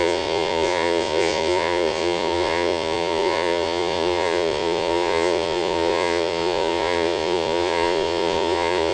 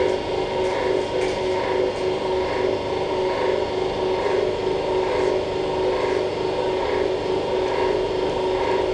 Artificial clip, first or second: first